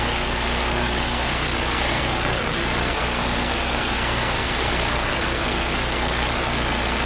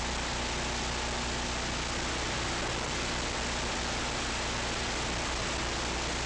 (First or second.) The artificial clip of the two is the first